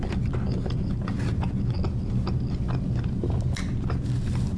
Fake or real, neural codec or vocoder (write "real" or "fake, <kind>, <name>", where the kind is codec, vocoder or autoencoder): real